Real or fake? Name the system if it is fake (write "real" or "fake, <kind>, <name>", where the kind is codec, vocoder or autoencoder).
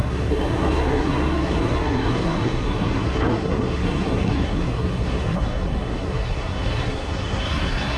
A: fake, codec, SNAC